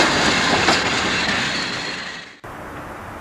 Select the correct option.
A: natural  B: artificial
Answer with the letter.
A